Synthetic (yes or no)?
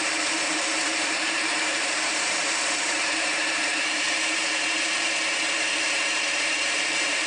yes